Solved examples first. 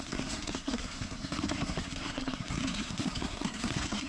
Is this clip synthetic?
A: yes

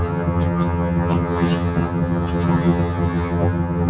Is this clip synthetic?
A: yes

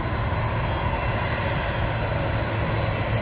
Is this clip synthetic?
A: no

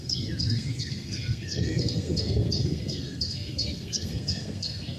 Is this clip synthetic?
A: yes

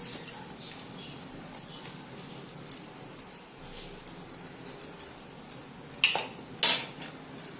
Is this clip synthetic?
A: no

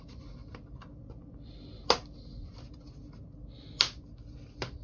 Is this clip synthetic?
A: no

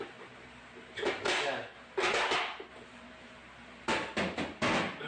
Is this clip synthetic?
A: no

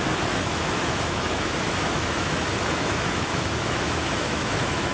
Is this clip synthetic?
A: yes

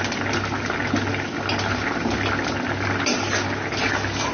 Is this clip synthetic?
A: no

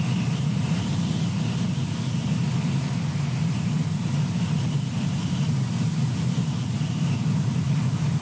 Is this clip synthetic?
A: no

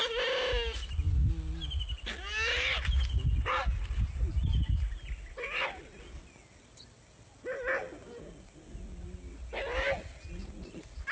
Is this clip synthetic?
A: no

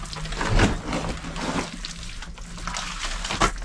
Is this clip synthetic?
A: no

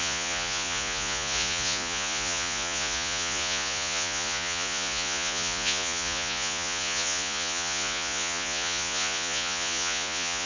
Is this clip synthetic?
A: yes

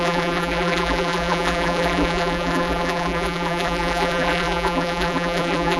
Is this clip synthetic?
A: yes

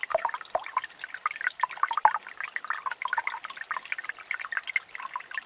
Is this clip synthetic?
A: no